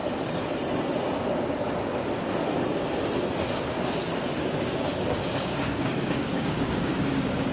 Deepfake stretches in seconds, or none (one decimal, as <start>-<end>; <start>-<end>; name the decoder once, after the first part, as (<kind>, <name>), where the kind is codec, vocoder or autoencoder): 4.5-7.5 (codec, DAC)